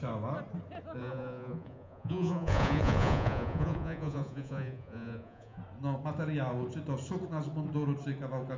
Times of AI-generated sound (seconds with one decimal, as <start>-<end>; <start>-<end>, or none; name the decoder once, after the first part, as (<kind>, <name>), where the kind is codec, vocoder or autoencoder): 1.0-5.6 (vocoder, Vocos)